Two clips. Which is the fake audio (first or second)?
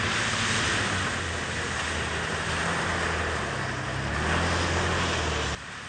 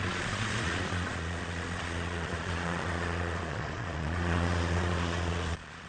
second